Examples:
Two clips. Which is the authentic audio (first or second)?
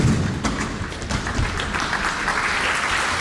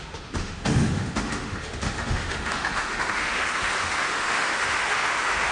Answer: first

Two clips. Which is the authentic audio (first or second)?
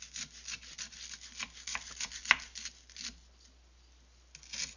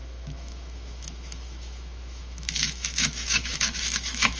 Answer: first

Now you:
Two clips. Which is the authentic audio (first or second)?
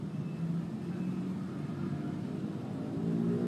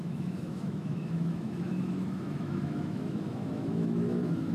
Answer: first